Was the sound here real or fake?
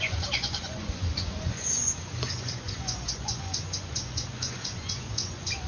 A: fake